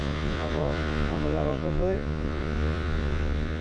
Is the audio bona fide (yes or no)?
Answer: no